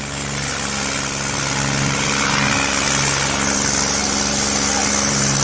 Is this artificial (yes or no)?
no